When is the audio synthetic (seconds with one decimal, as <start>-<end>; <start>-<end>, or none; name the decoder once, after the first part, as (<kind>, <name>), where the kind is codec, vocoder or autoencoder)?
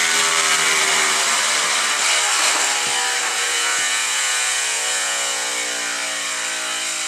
3.3-5.5 (vocoder, Vocos)